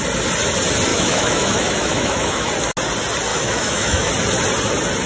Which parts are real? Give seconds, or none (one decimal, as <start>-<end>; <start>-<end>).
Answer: 0.0-0.9; 2.5-3.3; 4.1-5.1